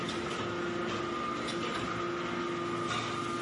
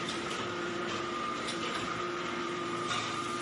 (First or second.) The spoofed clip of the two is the second